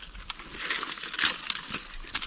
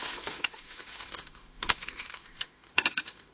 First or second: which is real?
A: first